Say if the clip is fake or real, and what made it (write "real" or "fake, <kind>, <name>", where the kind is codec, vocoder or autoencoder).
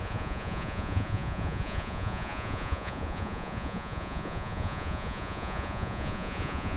fake, vocoder, Vocos